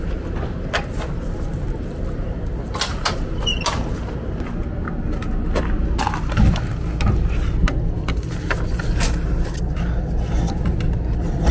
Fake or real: real